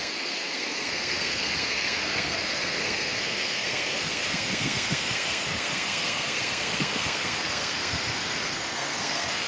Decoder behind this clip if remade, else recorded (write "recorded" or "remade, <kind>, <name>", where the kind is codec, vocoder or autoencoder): remade, codec, SNAC